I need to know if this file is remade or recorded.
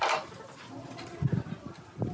recorded